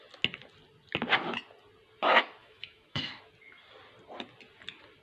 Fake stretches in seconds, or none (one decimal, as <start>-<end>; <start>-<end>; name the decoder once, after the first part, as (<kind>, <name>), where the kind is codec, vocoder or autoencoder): 2.4-3.2 (autoencoder, DAC-VAE)